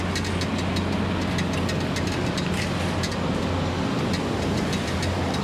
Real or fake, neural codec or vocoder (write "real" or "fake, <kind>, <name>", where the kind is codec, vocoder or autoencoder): real